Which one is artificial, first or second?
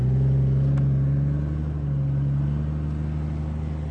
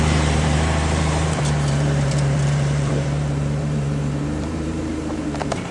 second